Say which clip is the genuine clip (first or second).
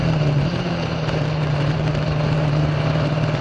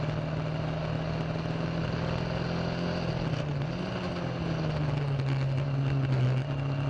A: second